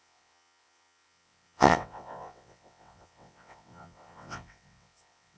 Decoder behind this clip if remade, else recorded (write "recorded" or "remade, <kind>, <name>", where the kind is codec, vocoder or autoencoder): remade, vocoder, WaveNeXt